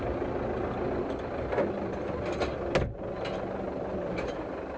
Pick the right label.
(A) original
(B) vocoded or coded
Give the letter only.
A